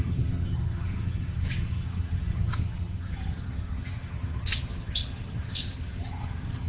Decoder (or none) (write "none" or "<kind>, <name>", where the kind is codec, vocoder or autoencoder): vocoder, HiFi-GAN